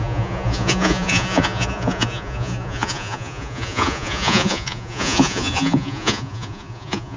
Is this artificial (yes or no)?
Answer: yes